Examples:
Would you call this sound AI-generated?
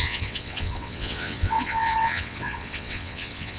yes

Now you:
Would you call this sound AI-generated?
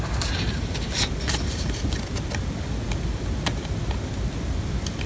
no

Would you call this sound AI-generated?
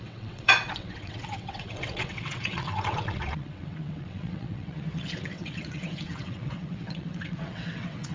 yes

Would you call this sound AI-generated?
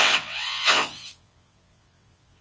yes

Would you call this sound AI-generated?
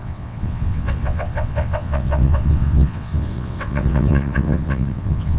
yes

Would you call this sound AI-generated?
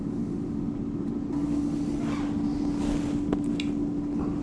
no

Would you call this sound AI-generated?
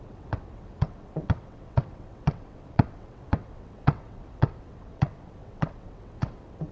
yes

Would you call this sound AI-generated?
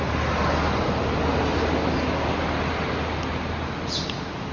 no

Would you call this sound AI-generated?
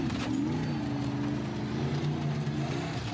no